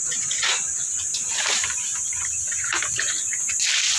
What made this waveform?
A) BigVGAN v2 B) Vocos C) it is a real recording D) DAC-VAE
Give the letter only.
C